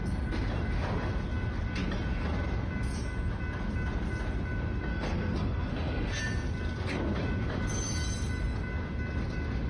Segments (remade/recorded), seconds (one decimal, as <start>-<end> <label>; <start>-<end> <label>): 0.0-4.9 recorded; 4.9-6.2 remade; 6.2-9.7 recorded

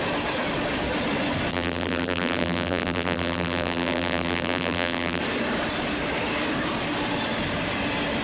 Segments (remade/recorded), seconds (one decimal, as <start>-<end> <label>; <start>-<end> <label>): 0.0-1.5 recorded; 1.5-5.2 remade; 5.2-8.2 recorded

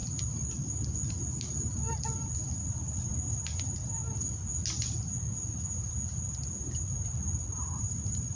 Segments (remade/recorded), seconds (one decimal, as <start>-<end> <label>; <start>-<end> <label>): 0.0-8.4 recorded

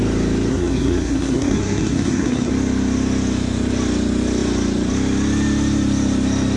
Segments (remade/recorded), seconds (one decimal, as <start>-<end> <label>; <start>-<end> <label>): 0.0-0.5 recorded; 0.5-2.5 remade; 2.5-6.6 recorded

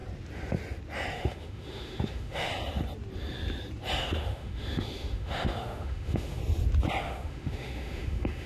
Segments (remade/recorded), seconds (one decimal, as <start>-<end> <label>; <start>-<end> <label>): 0.0-1.1 recorded; 1.1-2.5 remade; 2.5-4.0 recorded; 4.0-6.4 remade; 6.4-7.0 recorded; 7.0-8.5 remade